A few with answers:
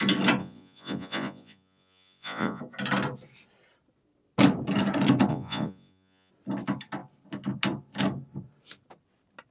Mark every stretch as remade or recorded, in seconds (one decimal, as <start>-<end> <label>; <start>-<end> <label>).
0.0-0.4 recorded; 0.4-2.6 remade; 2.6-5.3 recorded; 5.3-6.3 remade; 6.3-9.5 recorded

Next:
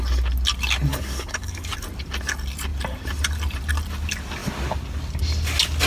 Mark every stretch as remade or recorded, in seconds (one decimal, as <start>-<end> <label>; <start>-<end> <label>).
0.0-0.9 recorded; 0.9-1.7 remade; 1.7-5.9 recorded

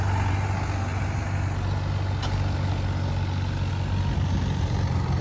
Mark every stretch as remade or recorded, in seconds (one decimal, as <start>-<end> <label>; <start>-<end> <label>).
0.0-5.2 recorded

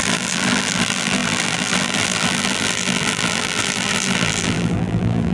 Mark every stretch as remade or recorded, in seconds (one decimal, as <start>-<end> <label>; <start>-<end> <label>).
0.0-5.3 remade

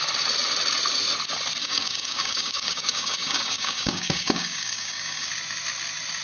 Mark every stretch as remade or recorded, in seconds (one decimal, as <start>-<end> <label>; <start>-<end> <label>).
0.0-1.6 recorded; 1.6-5.3 remade; 5.3-6.2 recorded